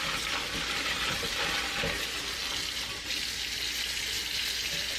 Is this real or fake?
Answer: real